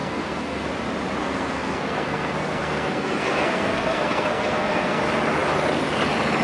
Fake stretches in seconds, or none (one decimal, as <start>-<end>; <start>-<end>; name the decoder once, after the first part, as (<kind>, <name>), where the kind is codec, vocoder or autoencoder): 0.0-0.7 (codec, SNAC); 1.2-5.0